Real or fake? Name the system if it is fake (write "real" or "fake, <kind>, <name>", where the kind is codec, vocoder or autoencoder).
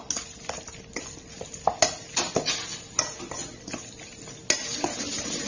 real